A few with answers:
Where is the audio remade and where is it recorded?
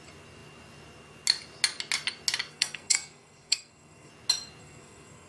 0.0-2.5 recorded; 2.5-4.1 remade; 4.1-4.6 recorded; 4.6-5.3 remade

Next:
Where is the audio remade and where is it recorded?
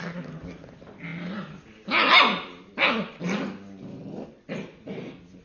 0.0-5.4 recorded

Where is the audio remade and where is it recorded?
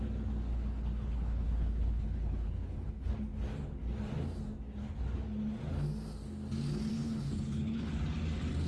0.0-0.5 recorded; 0.5-3.1 remade; 3.1-6.9 recorded; 6.9-7.9 remade; 7.9-8.7 recorded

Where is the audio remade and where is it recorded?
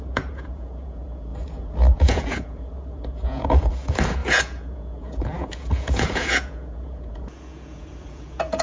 0.0-8.6 remade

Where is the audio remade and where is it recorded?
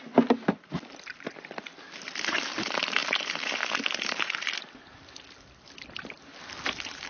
0.0-7.1 recorded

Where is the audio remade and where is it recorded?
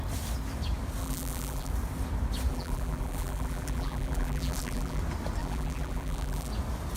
0.0-1.0 recorded; 1.0-1.7 remade; 1.7-2.5 recorded; 2.5-5.0 remade; 5.0-5.4 recorded; 5.4-6.5 remade; 6.5-7.0 recorded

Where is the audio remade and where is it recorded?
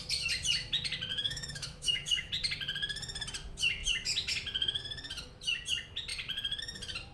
0.0-1.1 recorded; 1.1-2.3 remade; 2.3-7.1 recorded